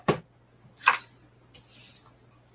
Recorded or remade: recorded